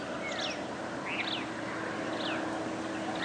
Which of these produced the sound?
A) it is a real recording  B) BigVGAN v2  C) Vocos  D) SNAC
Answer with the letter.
A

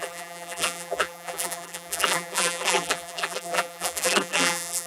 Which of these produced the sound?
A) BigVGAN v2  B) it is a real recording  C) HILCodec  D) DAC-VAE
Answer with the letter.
A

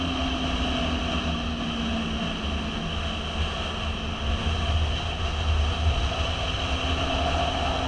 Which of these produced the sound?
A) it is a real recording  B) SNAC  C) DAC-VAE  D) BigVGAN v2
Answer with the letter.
A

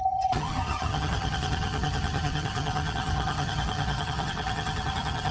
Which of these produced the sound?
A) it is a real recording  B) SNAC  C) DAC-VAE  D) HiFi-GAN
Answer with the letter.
D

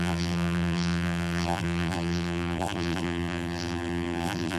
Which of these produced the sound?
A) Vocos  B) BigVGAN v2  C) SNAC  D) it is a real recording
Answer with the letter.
B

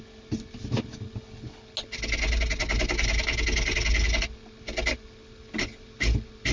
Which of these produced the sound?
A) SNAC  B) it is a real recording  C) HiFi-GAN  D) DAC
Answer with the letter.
B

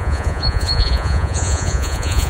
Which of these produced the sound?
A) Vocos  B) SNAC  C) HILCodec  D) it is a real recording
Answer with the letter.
A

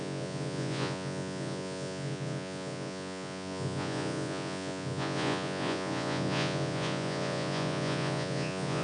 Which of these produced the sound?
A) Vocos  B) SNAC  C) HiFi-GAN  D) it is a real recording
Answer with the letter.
A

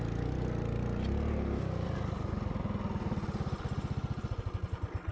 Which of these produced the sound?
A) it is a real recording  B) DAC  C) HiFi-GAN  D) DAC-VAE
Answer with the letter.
A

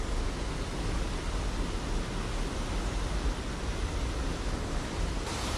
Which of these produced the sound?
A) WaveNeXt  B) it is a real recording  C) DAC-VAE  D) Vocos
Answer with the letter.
B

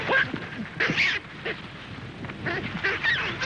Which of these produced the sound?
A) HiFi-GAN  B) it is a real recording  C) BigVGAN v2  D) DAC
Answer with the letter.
B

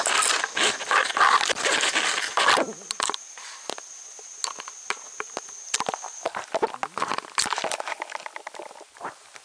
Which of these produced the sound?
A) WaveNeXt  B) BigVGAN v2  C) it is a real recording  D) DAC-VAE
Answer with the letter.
C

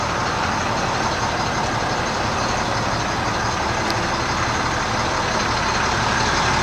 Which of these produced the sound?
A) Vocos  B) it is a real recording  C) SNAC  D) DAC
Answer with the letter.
B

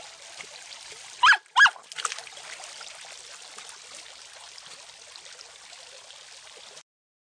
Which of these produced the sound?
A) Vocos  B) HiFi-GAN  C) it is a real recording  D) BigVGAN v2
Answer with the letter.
C